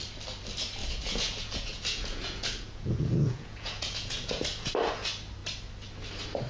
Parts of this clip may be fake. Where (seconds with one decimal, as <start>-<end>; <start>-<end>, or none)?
0.8-4.7